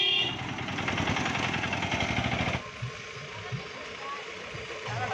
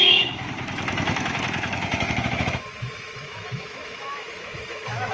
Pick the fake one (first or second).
second